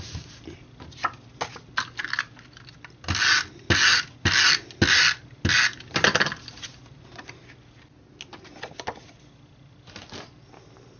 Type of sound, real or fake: real